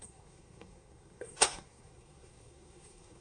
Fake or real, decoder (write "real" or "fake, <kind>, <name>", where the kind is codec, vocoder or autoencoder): fake, codec, SNAC